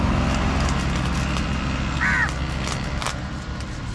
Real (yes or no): yes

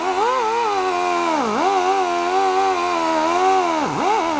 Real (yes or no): yes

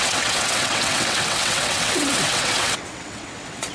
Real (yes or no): no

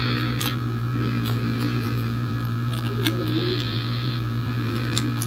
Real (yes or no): no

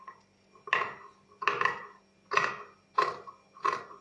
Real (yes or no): yes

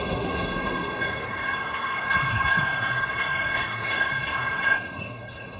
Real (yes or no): no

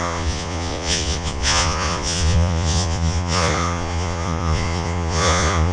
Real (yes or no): no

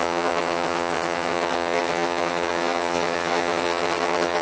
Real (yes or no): no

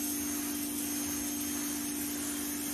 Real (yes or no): yes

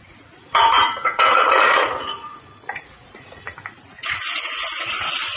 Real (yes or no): no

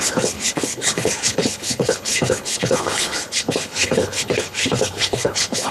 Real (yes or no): no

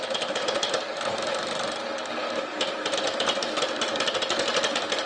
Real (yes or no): yes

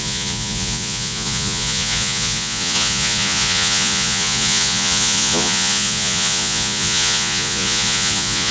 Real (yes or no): no